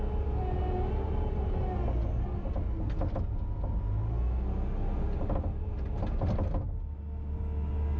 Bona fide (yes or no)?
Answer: yes